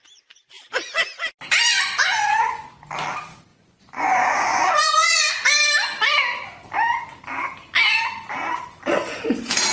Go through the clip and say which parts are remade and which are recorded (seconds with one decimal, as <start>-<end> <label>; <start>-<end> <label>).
0.0-1.7 recorded; 1.7-2.7 remade; 2.7-3.5 recorded; 3.5-5.3 remade; 5.3-9.7 recorded